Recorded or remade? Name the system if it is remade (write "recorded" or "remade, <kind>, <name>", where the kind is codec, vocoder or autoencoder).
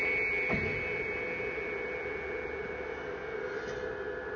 recorded